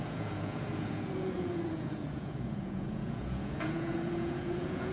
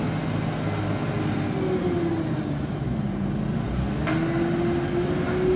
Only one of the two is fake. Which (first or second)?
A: first